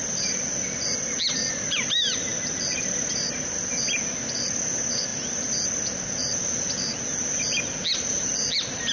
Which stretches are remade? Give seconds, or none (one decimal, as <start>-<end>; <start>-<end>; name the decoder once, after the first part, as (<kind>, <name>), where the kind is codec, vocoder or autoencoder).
none